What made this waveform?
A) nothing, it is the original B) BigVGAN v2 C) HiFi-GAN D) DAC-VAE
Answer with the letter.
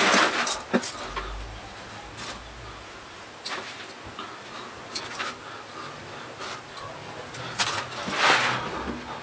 A